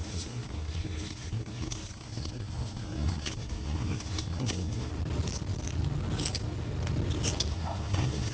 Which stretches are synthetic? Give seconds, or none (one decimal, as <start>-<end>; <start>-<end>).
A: 0.0-4.9; 7.5-8.3